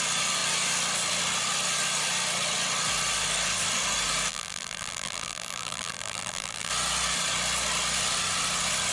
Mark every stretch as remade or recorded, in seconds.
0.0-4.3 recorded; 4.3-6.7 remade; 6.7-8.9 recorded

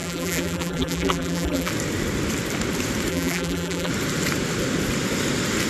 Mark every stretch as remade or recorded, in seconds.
0.0-1.7 remade; 1.7-3.1 recorded; 3.1-3.9 remade; 3.9-5.7 recorded

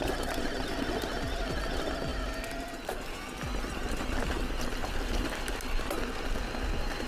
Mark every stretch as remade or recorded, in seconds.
0.0-7.1 recorded

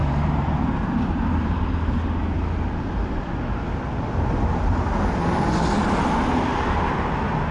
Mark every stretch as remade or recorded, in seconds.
0.0-1.6 remade; 1.6-7.5 recorded

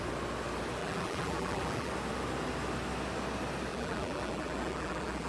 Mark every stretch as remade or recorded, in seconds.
0.0-0.8 recorded; 0.8-1.9 remade; 1.9-3.7 recorded; 3.7-5.3 remade

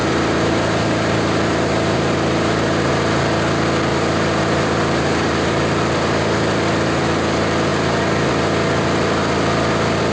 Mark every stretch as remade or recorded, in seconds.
0.0-2.9 remade; 2.9-3.9 recorded; 3.9-5.8 remade; 5.8-10.1 recorded